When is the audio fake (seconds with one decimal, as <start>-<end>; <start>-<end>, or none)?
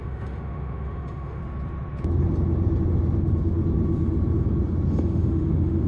0.0-1.4; 4.9-5.9